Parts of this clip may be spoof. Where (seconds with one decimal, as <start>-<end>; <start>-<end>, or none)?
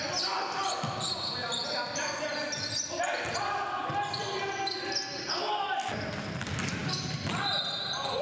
none